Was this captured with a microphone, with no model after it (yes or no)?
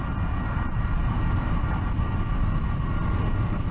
yes